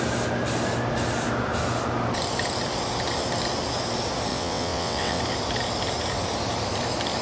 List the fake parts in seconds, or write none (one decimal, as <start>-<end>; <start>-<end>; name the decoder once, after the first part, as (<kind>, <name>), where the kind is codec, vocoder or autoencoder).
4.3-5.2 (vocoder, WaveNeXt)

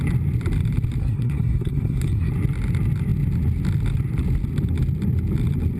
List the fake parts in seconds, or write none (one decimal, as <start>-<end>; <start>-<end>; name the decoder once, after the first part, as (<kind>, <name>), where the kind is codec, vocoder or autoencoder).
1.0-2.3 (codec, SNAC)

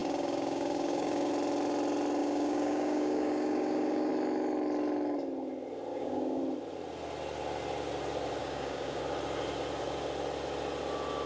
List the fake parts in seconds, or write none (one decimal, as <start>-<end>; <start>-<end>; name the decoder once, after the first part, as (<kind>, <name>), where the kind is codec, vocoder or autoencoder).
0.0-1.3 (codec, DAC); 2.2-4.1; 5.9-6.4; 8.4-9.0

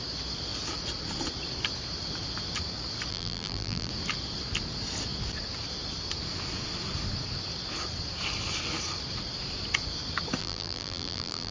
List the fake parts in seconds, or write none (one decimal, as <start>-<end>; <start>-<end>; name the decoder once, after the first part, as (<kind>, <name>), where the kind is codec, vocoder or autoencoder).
3.1-3.9 (vocoder, BigVGAN v2); 10.4-11.5

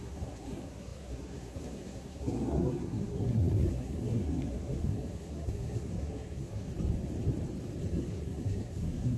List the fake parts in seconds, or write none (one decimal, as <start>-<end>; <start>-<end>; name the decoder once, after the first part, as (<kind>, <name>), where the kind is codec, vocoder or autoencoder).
0.0-6.7 (codec, SNAC); 7.9-9.2

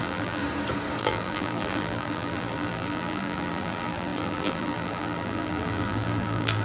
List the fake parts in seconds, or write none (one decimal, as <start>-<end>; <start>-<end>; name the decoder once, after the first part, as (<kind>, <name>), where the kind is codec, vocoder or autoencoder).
0.0-0.4 (vocoder, BigVGAN v2); 1.0-6.6

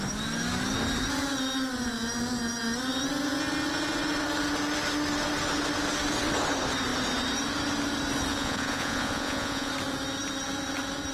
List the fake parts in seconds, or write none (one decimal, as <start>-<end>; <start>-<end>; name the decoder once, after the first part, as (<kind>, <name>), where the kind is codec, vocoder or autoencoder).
8.3-9.7 (vocoder, Vocos)

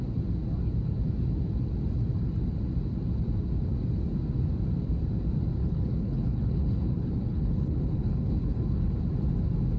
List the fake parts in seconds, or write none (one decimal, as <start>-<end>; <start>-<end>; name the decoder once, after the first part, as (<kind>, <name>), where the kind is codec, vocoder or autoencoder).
5.6-8.9 (codec, HILCodec)